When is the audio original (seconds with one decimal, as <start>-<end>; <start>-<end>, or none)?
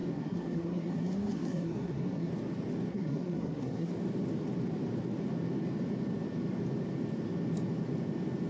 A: 2.3-2.9; 3.9-8.5